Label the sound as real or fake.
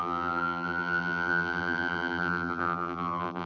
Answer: fake